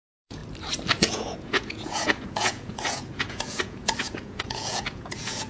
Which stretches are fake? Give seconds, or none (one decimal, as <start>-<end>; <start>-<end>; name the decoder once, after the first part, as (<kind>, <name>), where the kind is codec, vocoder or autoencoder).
0.0-0.4 (vocoder, Vocos); 1.0-5.5